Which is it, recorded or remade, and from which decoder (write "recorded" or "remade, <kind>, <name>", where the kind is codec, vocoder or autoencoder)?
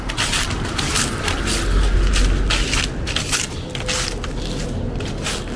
recorded